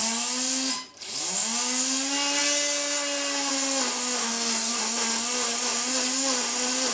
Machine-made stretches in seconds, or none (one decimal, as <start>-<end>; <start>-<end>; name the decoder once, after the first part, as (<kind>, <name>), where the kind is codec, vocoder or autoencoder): 4.2-4.8 (codec, DAC)